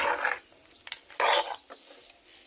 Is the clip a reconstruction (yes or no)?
no